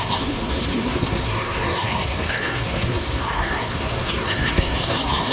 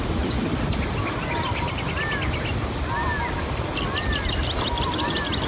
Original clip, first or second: second